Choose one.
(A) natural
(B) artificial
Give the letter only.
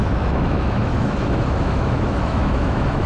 B